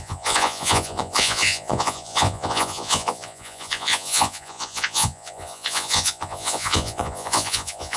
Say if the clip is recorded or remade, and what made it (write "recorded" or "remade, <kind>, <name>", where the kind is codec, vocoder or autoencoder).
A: remade, vocoder, Vocos